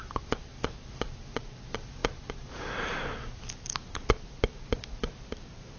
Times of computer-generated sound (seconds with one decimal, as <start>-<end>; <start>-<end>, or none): none